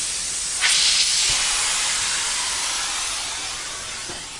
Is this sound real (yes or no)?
yes